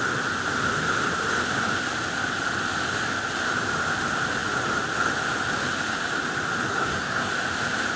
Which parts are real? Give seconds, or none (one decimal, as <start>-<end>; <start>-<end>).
0.0-6.7; 7.3-8.0